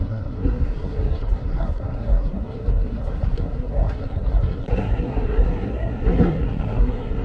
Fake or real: fake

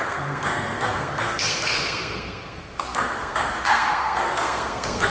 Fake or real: fake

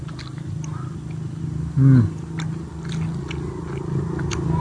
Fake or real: real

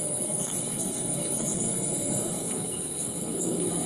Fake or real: fake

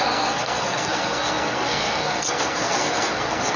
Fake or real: fake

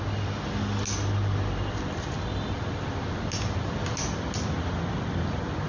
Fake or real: real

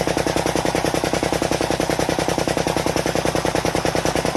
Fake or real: real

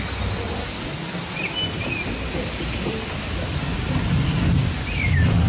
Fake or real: real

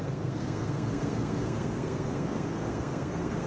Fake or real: fake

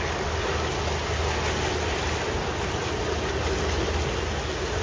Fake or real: real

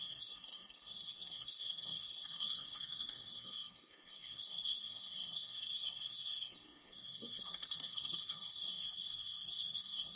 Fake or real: fake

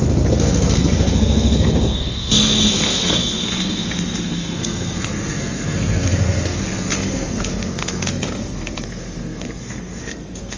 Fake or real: fake